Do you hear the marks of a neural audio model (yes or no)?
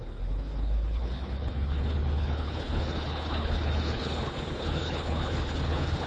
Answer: yes